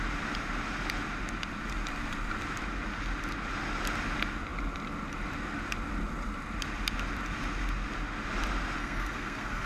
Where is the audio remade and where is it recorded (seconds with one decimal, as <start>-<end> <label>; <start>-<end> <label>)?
0.0-8.8 recorded; 8.8-9.7 remade